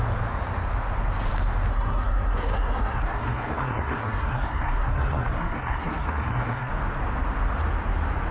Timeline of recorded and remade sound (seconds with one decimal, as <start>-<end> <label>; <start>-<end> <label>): 0.0-1.7 recorded; 1.7-6.7 remade; 6.7-8.3 recorded